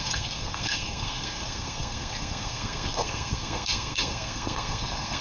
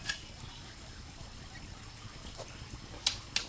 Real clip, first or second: second